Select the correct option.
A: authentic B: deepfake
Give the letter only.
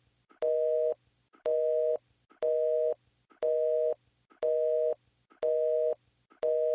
A